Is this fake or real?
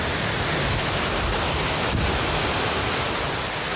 real